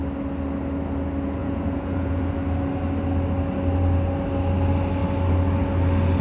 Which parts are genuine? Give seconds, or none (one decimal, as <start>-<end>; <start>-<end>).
0.0-1.4; 2.3-6.2